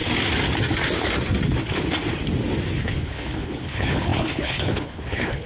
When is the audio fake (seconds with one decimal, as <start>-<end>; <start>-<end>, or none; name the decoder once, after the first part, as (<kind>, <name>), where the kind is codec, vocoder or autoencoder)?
2.8-5.5 (codec, HILCodec)

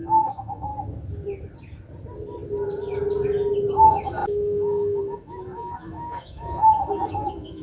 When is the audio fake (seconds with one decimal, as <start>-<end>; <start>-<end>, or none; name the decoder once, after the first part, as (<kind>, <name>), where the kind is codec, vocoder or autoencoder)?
0.0-0.7 (autoencoder, DAC-VAE); 3.7-7.6